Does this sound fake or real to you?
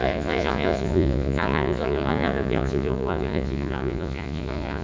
fake